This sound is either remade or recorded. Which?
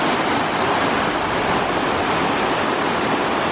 recorded